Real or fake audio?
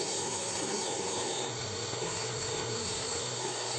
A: fake